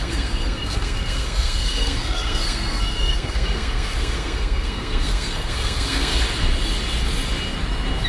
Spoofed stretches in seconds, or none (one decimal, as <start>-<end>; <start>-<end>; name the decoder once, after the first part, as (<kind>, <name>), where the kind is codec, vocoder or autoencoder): 0.0-6.1 (codec, SNAC)